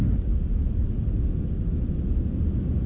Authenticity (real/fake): real